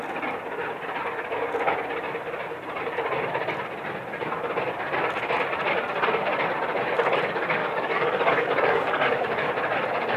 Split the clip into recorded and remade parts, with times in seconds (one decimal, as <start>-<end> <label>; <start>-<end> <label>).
0.0-7.6 recorded; 7.6-9.5 remade; 9.5-10.2 recorded